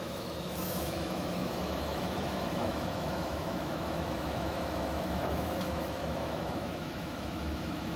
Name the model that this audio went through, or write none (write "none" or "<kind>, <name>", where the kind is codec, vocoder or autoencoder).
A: autoencoder, DAC-VAE